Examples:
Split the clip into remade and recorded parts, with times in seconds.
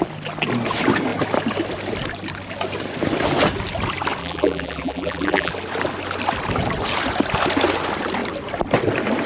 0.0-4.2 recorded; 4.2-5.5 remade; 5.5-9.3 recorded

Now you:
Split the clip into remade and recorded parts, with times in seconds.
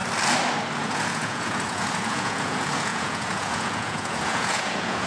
0.0-0.8 recorded; 0.8-5.1 remade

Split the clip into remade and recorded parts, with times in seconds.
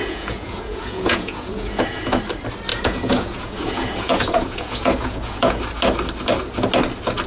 0.0-2.2 remade; 2.2-2.7 recorded; 2.7-5.6 remade; 5.6-7.3 recorded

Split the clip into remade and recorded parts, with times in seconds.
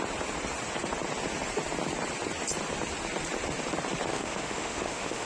0.0-4.1 recorded; 4.1-5.3 remade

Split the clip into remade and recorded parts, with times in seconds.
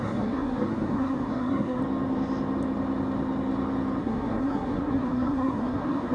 0.0-1.8 remade; 1.8-4.0 recorded; 4.0-6.1 remade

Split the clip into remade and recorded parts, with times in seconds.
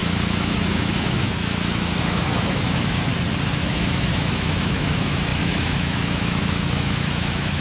0.0-3.1 remade; 3.1-3.6 recorded; 3.6-7.6 remade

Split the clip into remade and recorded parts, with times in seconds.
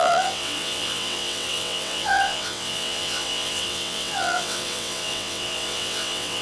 0.0-6.4 remade